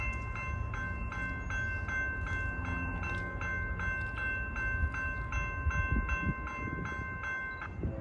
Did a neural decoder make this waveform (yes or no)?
no